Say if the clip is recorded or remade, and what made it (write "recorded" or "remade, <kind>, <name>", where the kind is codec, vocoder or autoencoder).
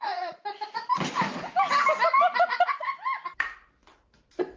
recorded